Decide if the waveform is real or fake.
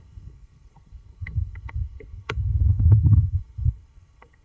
fake